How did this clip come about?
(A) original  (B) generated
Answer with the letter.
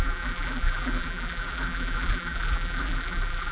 B